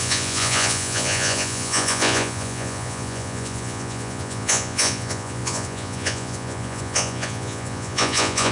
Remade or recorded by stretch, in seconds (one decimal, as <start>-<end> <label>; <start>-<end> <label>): 0.0-8.5 remade